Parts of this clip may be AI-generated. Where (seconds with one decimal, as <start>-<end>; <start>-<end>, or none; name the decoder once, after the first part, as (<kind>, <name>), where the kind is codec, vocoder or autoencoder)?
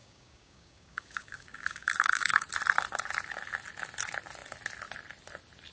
0.0-2.5 (codec, DAC)